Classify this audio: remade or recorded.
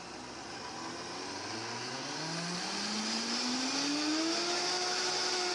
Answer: recorded